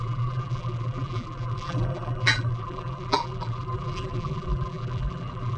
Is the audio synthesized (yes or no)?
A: yes